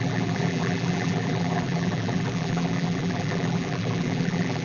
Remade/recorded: remade